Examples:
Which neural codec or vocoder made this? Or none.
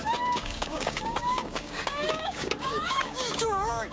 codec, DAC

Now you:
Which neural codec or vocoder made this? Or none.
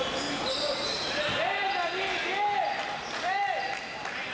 none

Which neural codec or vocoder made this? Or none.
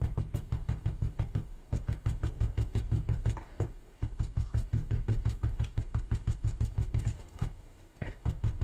codec, DAC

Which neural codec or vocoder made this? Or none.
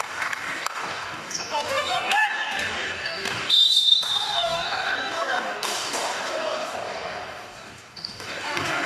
codec, DAC